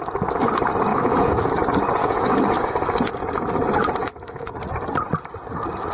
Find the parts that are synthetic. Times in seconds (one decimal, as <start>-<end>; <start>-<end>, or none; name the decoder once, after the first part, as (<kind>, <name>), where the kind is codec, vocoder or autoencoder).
0.9-1.6 (autoencoder, DAC-VAE); 2.0-2.7; 4.0-4.5

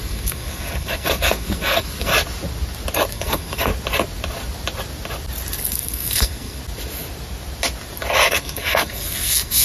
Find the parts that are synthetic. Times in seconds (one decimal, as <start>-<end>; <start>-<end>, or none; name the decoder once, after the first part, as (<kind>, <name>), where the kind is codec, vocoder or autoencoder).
0.0-2.1 (codec, SNAC); 3.1-3.7; 5.7-6.6; 8.3-9.6

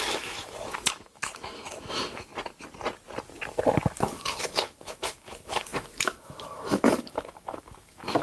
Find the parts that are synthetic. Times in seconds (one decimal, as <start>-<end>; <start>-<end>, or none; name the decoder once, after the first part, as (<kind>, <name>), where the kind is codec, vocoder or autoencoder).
0.0-2.3 (autoencoder, DAC-VAE); 3.5-8.2

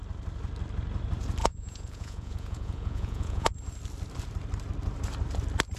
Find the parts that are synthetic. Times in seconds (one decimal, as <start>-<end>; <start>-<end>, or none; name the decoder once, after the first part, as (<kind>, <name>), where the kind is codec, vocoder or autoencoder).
1.4-3.5 (vocoder, Vocos)